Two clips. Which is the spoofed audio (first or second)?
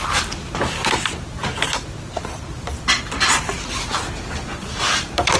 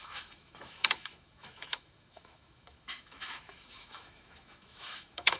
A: second